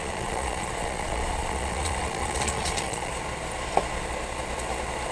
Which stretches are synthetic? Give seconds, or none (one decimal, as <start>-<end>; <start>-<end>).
0.0-3.1